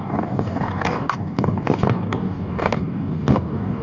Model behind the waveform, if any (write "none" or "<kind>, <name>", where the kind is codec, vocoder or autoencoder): codec, DAC